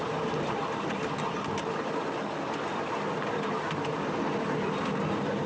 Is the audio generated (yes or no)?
no